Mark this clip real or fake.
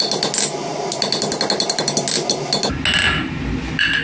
real